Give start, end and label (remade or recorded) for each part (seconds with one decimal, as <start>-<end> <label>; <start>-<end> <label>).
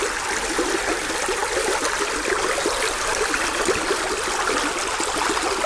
0.0-5.7 recorded